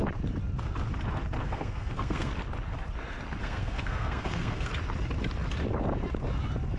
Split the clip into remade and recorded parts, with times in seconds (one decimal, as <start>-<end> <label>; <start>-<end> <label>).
0.0-1.4 recorded; 1.4-2.3 remade; 2.3-3.4 recorded; 3.4-4.7 remade; 4.7-6.8 recorded